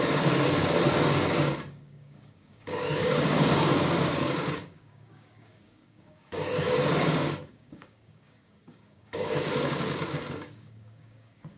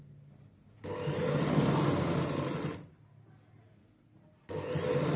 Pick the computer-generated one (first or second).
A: first